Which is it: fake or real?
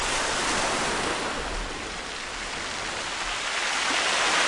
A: real